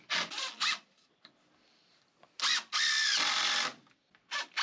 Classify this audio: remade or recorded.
recorded